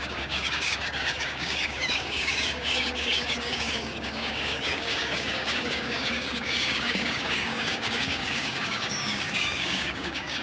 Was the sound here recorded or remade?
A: remade